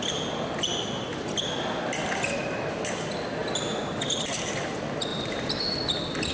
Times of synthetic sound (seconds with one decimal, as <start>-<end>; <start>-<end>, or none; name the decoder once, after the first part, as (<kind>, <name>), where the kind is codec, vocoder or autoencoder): 5.1-5.6 (vocoder, BigVGAN v2)